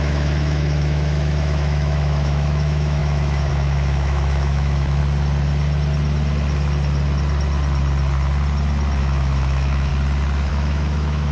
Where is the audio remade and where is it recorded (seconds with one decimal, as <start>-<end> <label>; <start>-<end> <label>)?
0.0-5.0 remade; 5.0-9.0 recorded; 9.0-9.9 remade; 9.9-10.5 recorded; 10.5-11.3 remade